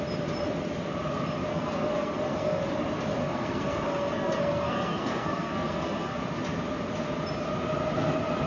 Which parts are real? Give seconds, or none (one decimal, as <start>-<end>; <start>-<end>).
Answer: 0.0-1.5; 2.6-3.2; 6.2-8.5

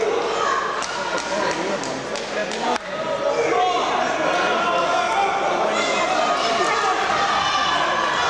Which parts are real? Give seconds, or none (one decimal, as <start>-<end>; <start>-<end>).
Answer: 0.0-8.3

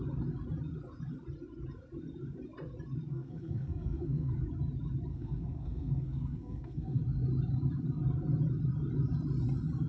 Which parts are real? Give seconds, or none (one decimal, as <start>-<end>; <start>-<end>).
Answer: 0.0-3.1; 4.3-5.1; 7.0-9.9

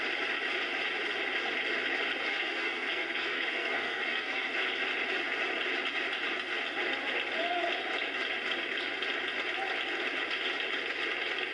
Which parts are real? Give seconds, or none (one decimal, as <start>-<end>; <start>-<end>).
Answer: 0.0-2.3; 4.5-11.5

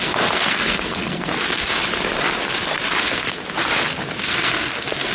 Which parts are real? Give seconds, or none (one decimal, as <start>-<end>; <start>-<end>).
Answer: 1.7-3.0; 3.4-4.2

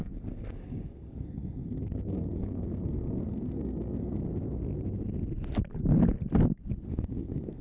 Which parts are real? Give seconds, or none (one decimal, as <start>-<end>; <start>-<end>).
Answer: 4.2-6.9